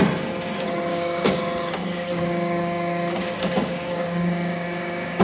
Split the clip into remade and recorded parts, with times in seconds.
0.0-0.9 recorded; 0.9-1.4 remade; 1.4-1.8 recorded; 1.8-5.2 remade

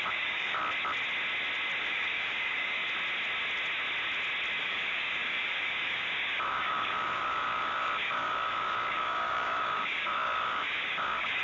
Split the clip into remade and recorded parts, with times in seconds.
0.0-0.6 remade; 0.6-1.8 recorded; 1.8-2.8 remade; 2.8-4.6 recorded; 4.6-11.4 remade